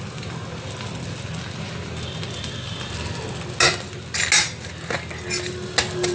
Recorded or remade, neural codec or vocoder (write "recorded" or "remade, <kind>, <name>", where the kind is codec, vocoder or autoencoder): recorded